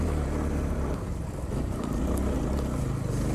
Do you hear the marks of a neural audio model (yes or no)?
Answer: no